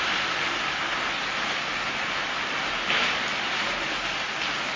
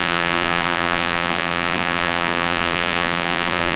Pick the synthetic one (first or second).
second